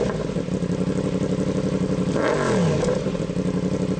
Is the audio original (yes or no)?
yes